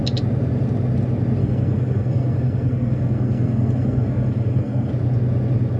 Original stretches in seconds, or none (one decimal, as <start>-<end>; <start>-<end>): 0.0-1.4; 4.9-5.8